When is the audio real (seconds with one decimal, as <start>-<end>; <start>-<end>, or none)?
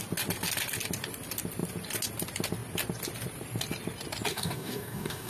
0.0-4.3